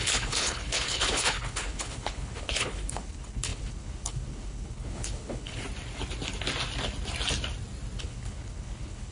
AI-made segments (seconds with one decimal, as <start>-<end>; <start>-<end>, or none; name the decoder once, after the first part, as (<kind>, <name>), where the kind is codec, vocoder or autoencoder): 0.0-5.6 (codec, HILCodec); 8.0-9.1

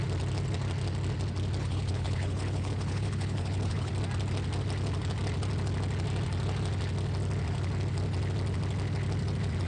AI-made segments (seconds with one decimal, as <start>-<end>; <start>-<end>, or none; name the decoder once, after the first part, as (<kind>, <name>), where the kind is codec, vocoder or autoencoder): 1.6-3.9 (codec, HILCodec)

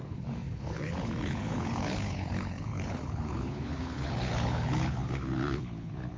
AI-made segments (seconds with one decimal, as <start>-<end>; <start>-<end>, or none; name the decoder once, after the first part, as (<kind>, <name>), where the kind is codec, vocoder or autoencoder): 0.0-6.2 (codec, HILCodec)

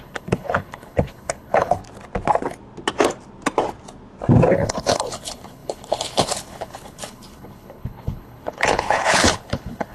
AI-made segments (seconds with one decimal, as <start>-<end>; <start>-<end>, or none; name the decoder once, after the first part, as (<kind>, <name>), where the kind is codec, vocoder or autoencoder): 0.0-1.8 (codec, HILCodec); 4.5-9.9

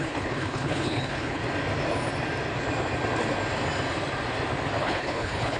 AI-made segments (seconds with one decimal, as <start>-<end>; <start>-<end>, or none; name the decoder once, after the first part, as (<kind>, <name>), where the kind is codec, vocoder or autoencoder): 0.0-1.4 (codec, HILCodec); 4.8-5.6

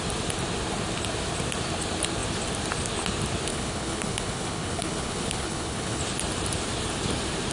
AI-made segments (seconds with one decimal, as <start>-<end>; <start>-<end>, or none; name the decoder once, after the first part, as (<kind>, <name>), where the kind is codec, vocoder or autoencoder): 3.5-6.0 (codec, HILCodec)

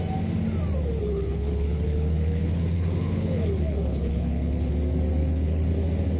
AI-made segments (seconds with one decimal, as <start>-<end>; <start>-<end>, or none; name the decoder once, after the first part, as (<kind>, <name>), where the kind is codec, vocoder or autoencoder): 1.0-4.7 (codec, HILCodec); 5.2-5.7